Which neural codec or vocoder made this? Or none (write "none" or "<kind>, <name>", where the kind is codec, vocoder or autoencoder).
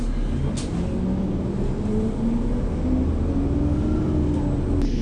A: none